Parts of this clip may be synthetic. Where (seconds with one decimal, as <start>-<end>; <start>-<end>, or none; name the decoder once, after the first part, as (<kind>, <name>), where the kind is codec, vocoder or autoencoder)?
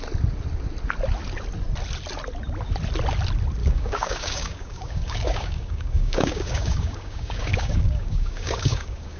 3.6-9.2 (codec, DAC)